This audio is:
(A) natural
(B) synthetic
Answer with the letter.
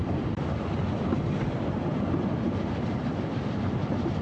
B